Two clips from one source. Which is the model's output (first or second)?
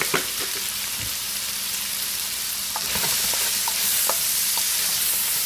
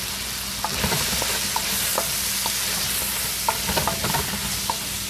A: first